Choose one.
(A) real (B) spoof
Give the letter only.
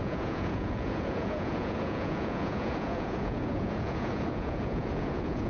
B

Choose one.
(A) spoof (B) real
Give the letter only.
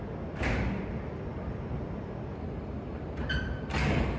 B